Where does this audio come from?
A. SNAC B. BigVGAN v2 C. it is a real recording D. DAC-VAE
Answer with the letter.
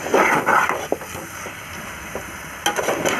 C